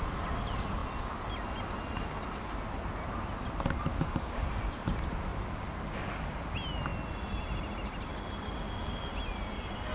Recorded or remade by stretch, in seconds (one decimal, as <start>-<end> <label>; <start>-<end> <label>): 0.0-3.9 recorded; 3.9-4.5 remade; 4.5-9.9 recorded